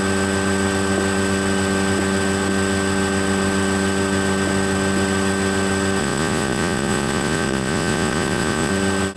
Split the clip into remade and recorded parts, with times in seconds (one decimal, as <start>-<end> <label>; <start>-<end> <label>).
0.0-6.0 recorded; 6.0-8.7 remade; 8.7-9.2 recorded